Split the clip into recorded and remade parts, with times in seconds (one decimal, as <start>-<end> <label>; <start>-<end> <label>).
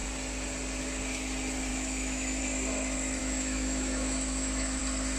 0.0-1.7 recorded; 1.7-2.4 remade; 2.4-3.2 recorded; 3.2-4.8 remade; 4.8-5.2 recorded